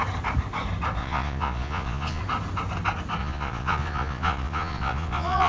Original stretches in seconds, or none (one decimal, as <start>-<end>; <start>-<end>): 0.0-1.0; 2.2-3.2